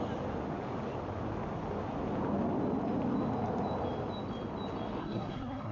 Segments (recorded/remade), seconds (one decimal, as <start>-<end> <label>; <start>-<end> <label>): 0.0-5.0 recorded; 5.0-5.7 remade